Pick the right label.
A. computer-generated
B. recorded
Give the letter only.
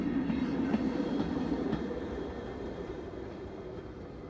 B